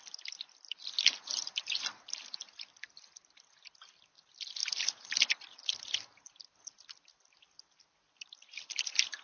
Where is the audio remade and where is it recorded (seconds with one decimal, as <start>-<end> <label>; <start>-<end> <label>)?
0.0-9.2 recorded